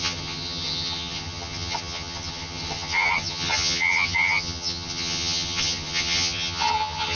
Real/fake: fake